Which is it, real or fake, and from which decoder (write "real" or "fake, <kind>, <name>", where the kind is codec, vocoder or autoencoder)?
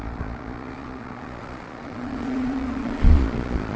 fake, vocoder, Vocos